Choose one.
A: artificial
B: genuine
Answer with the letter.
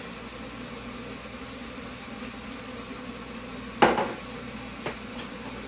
B